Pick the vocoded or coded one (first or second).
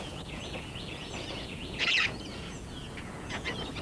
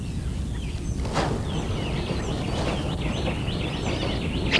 first